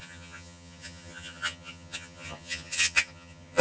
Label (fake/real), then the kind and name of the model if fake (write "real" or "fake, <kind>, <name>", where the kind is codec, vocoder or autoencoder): fake, vocoder, HiFi-GAN